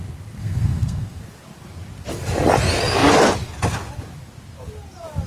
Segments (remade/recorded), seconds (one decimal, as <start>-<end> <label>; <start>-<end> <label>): 0.0-0.4 recorded; 0.4-1.2 remade; 1.2-5.3 recorded